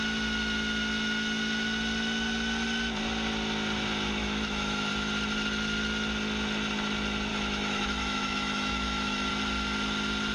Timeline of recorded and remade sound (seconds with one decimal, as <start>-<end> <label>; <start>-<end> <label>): 0.0-4.2 recorded; 4.2-4.9 remade; 4.9-7.3 recorded; 7.3-9.3 remade; 9.3-10.3 recorded